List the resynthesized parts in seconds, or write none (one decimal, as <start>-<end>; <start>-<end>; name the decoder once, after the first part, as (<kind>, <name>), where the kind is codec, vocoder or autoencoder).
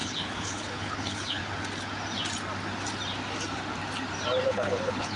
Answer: 0.0-1.4 (codec, HILCodec); 4.5-5.2